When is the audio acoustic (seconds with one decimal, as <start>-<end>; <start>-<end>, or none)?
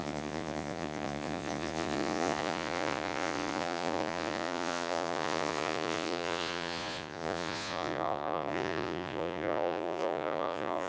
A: none